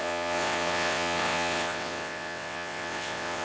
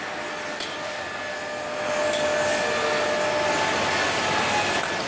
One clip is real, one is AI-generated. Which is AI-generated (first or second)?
first